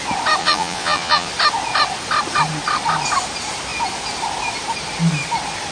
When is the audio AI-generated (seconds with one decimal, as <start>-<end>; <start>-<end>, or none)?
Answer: 0.4-1.3